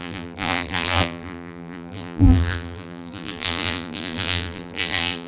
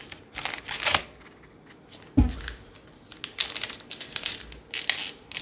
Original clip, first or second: second